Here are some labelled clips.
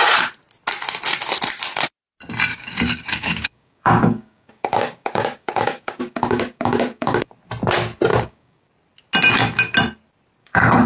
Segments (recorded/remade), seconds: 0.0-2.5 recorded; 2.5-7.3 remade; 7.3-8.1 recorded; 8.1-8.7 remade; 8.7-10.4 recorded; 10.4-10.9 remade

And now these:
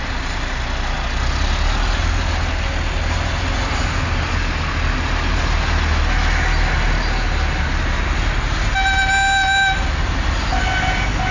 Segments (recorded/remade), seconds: 0.0-11.3 recorded